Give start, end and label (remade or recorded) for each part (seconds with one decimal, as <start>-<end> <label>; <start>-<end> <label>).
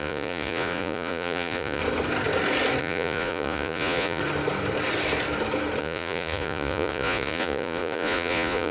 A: 0.0-1.8 remade; 1.8-2.8 recorded; 2.8-4.2 remade; 4.2-5.8 recorded; 5.8-8.7 remade